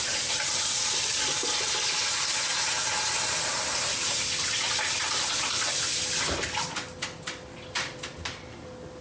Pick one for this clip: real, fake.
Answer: real